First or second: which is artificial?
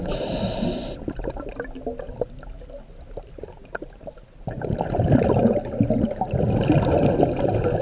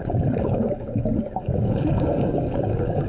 second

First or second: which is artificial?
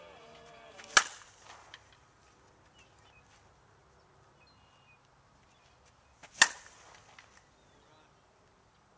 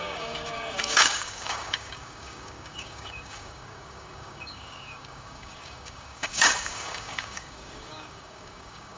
second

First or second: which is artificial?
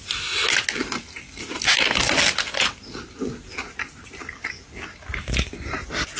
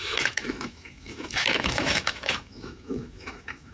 second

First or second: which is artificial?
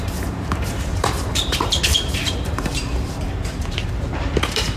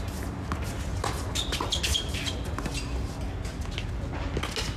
first